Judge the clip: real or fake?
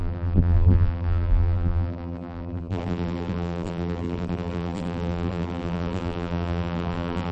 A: fake